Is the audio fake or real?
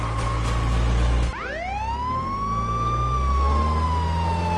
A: real